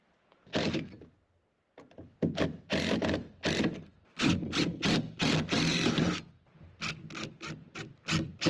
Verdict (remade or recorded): recorded